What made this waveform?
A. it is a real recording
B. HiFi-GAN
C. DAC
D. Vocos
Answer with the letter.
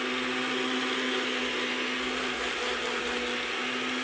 A